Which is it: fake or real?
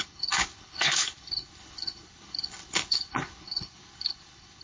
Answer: fake